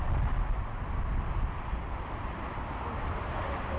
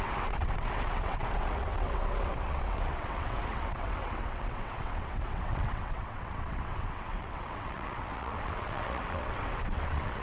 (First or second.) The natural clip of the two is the first